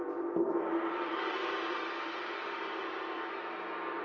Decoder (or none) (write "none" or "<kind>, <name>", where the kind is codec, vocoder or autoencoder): vocoder, BigVGAN v2